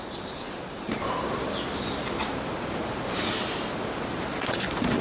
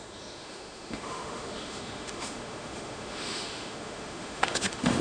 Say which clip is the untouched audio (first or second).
first